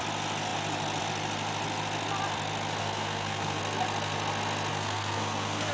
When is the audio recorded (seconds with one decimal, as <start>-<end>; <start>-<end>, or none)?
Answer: 0.0-2.8; 3.6-4.7